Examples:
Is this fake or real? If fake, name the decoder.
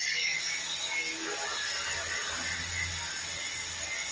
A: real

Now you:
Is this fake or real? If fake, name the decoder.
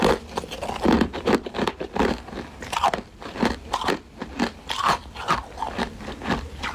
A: fake, vocoder, BigVGAN v2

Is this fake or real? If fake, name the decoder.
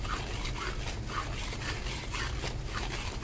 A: real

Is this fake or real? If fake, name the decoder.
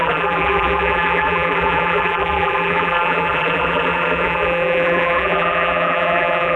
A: fake, vocoder, BigVGAN v2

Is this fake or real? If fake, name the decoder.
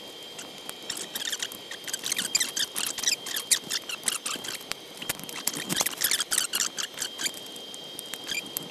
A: real